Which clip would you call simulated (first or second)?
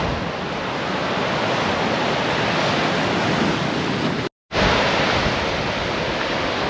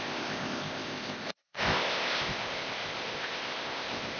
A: second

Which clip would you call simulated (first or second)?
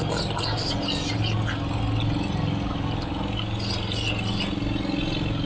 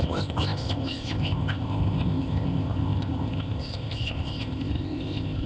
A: second